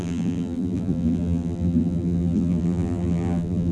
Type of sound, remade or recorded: remade